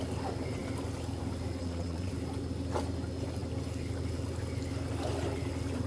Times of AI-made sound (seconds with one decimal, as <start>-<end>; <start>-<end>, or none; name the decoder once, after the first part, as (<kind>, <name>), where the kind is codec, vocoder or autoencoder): 1.6-2.1 (vocoder, WaveNeXt)